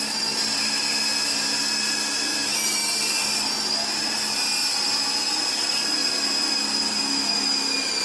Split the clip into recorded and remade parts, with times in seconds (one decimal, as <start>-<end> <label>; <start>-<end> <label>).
0.0-8.0 recorded